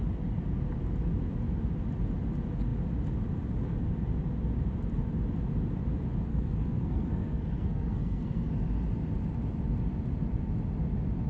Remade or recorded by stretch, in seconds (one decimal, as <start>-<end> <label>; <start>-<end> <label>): 0.0-6.3 recorded; 6.3-8.5 remade; 8.5-11.3 recorded